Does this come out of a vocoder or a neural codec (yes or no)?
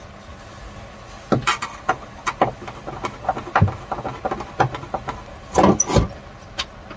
no